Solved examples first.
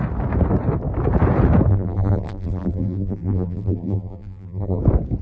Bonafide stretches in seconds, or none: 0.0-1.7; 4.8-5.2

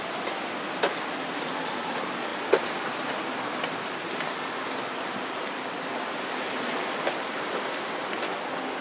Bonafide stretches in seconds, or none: 0.0-8.8

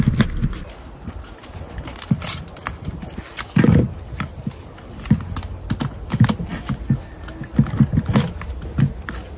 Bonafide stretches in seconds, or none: 0.0-9.4